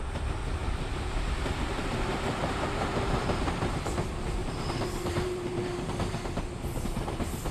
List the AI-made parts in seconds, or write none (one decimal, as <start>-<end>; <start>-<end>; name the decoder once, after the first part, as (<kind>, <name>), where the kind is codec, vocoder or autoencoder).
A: 2.4-3.5 (vocoder, BigVGAN v2); 4.4-6.4